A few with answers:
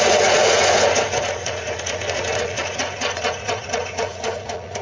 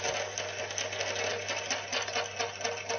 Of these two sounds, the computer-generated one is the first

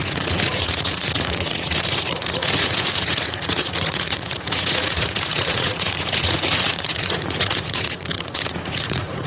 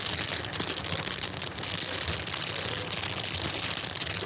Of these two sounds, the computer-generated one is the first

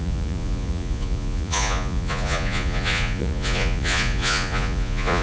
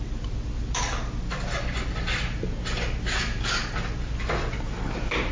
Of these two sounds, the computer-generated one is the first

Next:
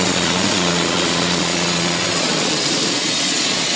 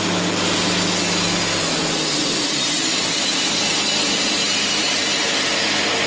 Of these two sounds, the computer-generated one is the first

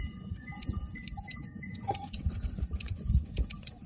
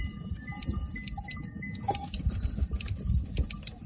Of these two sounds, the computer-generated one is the first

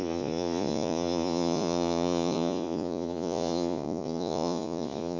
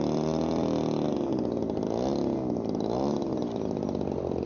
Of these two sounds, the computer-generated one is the first